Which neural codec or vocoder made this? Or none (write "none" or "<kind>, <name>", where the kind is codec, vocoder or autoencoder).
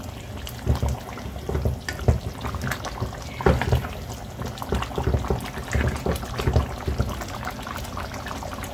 none